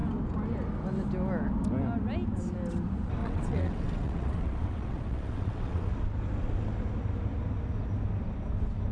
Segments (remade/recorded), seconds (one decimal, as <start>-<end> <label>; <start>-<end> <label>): 0.0-3.2 recorded; 3.2-5.9 remade; 5.9-8.9 recorded